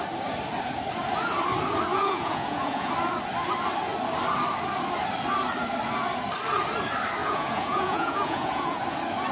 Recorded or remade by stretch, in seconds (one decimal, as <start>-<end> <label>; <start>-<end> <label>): 0.0-1.9 recorded; 1.9-2.9 remade; 2.9-7.2 recorded; 7.2-8.8 remade; 8.8-9.3 recorded